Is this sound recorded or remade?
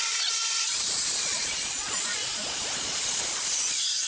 remade